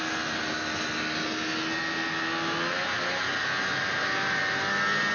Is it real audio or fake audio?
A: real